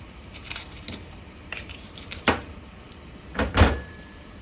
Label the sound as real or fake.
fake